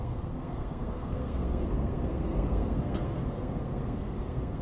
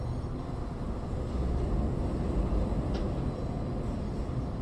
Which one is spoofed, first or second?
first